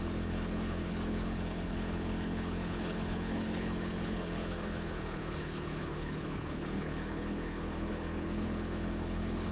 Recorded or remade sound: remade